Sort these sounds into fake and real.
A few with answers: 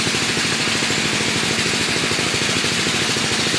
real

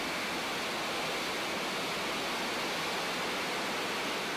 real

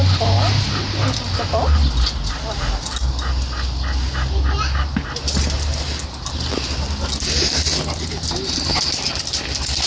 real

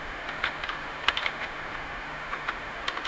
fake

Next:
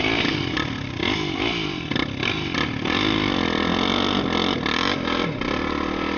real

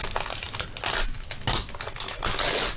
real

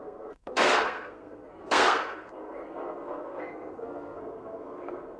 fake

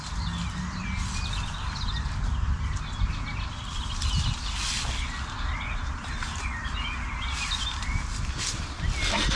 real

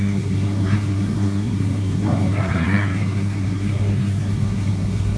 fake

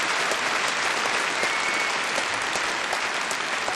real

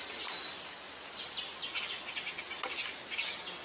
real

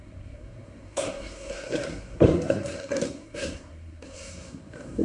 fake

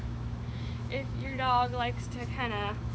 fake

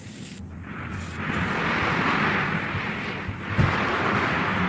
real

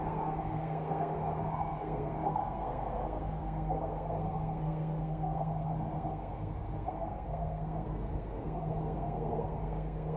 fake